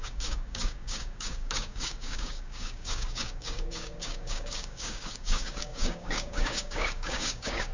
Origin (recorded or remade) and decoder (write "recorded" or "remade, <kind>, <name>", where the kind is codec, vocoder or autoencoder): remade, codec, DAC